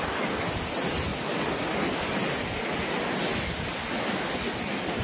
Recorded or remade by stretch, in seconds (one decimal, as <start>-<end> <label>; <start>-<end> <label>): 0.0-5.0 recorded